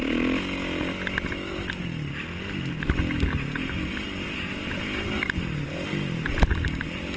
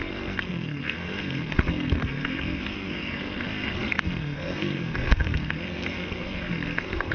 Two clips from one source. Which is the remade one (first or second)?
second